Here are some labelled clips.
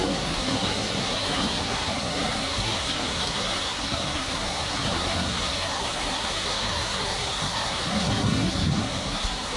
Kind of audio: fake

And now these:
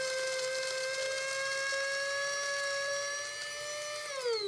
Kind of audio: real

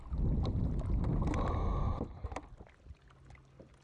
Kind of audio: real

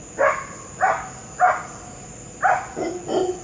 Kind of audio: real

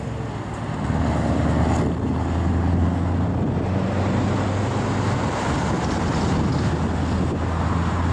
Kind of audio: real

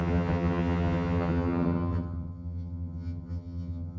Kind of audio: fake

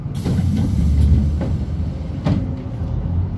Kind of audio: real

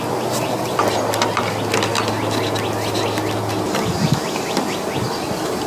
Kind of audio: real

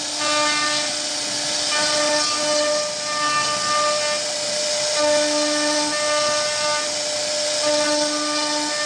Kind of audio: real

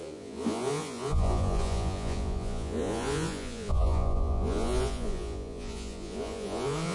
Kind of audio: fake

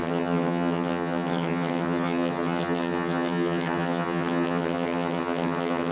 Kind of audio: fake